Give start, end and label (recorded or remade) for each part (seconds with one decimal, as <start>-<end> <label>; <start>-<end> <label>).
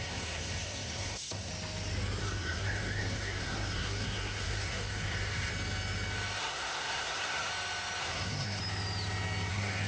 0.0-1.5 remade; 1.5-2.2 recorded; 2.2-5.5 remade; 5.5-6.4 recorded; 6.4-7.5 remade; 7.5-8.0 recorded; 8.0-8.6 remade; 8.6-9.5 recorded; 9.5-9.9 remade